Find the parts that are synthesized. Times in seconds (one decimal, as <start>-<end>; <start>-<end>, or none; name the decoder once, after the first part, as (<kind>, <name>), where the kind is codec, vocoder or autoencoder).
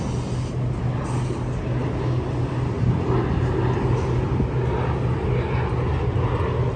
none